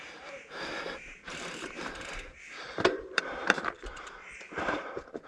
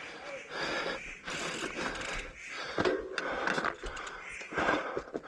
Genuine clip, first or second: second